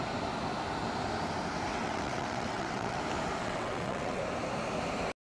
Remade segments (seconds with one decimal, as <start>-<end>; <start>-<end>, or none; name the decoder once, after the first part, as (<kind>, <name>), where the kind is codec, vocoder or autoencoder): 1.7-3.0 (vocoder, WaveNeXt); 3.4-4.2